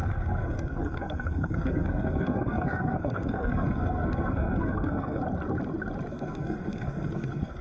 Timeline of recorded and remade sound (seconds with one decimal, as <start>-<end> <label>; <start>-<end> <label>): 0.0-5.2 remade; 5.2-6.1 recorded; 6.1-7.6 remade

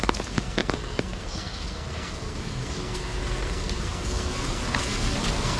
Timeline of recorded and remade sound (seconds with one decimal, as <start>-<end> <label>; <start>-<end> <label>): 0.0-5.6 remade

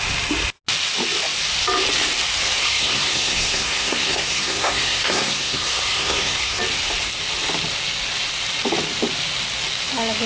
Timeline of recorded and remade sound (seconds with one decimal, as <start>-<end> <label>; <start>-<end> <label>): 0.0-2.6 recorded; 2.6-6.6 remade; 6.6-10.3 recorded

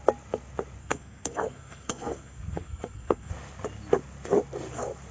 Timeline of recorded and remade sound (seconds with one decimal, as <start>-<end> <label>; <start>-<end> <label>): 0.0-0.8 recorded; 0.8-3.3 remade; 3.3-5.1 recorded

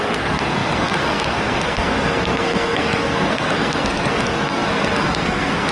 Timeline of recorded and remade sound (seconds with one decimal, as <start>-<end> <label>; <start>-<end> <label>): 0.0-5.7 remade

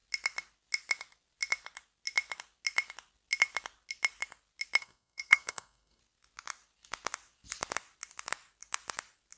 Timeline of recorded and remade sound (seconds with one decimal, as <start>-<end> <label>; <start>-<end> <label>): 0.0-4.8 recorded; 4.8-6.0 remade; 6.0-9.4 recorded

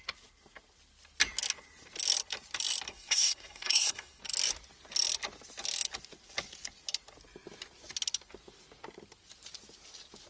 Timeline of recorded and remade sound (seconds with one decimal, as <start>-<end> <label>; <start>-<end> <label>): 0.0-2.9 recorded; 2.9-4.2 remade; 4.2-10.3 recorded

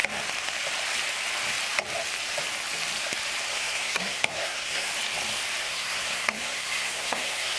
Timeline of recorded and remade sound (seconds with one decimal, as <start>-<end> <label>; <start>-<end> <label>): 0.0-3.5 recorded; 3.5-4.9 remade; 4.9-5.6 recorded; 5.6-7.6 remade